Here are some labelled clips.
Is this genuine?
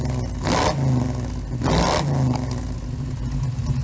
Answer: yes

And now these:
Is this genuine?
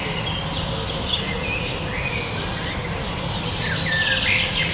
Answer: yes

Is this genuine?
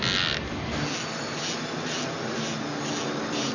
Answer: yes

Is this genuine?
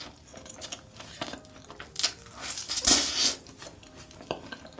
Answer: yes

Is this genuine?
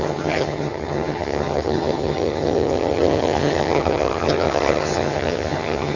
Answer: no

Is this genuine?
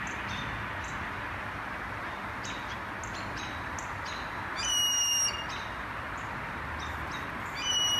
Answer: yes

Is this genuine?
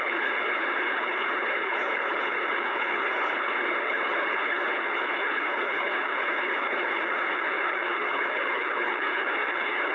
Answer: no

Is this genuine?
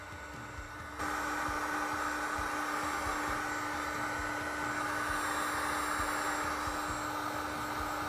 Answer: yes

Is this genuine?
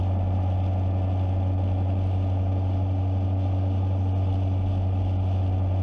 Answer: yes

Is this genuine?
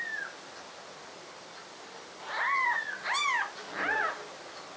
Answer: yes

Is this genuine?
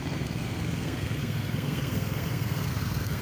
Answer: no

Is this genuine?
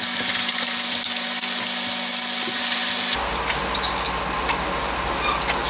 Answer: yes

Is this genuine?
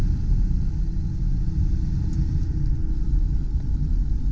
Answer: yes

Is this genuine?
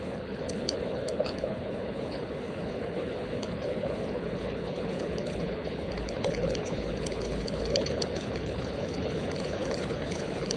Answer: no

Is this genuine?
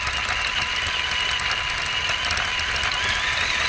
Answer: yes